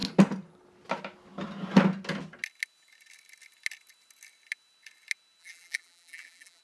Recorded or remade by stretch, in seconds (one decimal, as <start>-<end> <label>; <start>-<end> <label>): 0.0-5.4 recorded; 5.4-6.6 remade